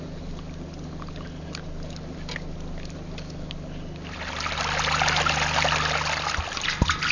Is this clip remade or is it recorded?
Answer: recorded